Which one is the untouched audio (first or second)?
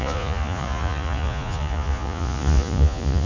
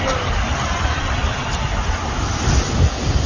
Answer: second